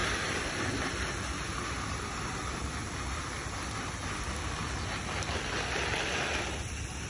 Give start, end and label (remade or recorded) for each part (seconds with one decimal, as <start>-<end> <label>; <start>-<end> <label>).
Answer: 0.0-0.9 remade; 0.9-7.1 recorded